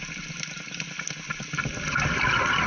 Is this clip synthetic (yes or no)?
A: no